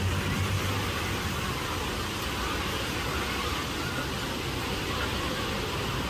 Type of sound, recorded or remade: recorded